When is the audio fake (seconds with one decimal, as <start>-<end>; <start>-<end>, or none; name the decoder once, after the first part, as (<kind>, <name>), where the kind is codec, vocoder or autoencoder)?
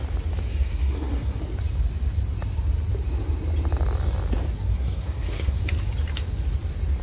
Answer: 0.5-1.4 (codec, SNAC); 4.7-5.6